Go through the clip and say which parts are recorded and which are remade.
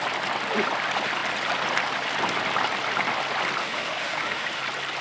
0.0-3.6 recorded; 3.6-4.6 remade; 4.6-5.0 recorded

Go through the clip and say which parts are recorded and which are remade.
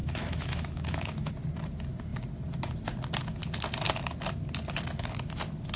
0.0-1.3 remade; 1.3-5.8 recorded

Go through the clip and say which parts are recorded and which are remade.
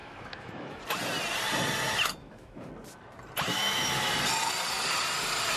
0.0-0.8 remade; 0.8-2.2 recorded; 2.2-2.7 remade; 2.7-3.5 recorded; 3.5-4.1 remade; 4.1-5.6 recorded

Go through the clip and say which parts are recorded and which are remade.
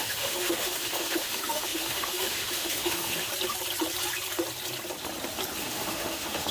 0.0-3.3 remade; 3.3-5.6 recorded; 5.6-6.5 remade